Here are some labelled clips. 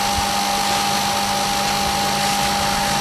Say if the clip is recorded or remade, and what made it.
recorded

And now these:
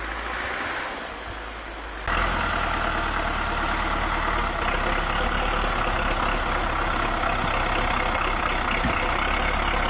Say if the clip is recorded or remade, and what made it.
recorded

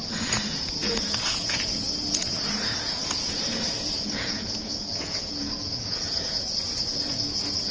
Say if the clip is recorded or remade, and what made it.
remade, vocoder, Vocos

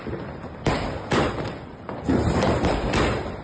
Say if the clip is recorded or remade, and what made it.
remade, vocoder, BigVGAN v2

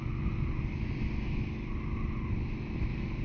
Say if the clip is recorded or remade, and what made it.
recorded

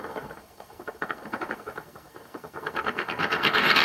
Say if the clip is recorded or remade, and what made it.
remade, codec, SNAC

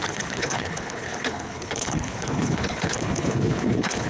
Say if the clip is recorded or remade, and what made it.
remade, codec, HILCodec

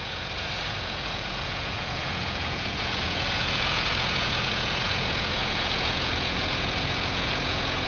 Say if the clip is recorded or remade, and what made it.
remade, vocoder, Vocos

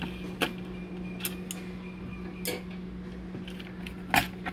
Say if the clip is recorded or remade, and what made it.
recorded